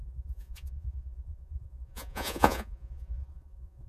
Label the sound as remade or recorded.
remade